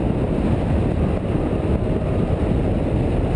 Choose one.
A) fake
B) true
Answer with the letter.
B